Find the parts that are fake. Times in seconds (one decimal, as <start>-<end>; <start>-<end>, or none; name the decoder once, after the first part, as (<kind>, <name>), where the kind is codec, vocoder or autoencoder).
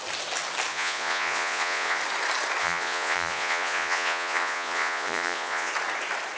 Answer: 0.7-2.0 (vocoder, Vocos); 2.6-5.7